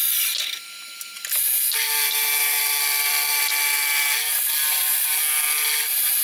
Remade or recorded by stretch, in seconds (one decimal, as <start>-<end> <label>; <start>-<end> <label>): 0.0-6.2 recorded